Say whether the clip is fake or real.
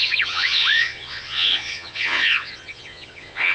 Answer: fake